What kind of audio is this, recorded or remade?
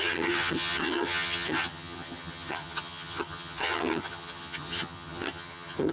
remade